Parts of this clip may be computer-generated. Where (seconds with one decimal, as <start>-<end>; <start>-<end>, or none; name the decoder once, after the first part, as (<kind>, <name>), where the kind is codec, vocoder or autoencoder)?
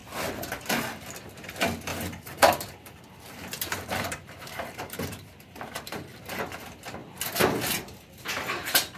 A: 1.9-6.4 (vocoder, BigVGAN v2)